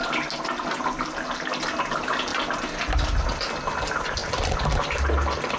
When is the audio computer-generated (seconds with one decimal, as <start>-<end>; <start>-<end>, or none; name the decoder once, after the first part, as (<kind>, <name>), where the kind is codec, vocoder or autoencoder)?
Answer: none